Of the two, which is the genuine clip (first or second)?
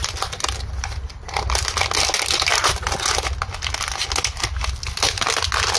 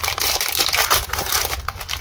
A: first